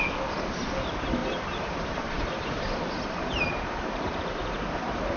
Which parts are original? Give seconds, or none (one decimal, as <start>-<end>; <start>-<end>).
0.0-1.2; 4.3-5.2